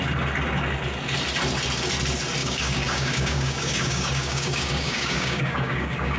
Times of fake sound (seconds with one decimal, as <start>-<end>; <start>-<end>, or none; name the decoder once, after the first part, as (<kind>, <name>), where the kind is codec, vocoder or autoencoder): 2.4-6.2 (codec, DAC)